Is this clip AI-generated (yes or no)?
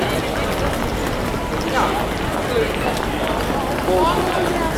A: no